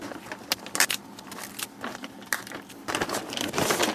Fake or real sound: real